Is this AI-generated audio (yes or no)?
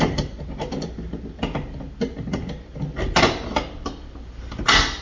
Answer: no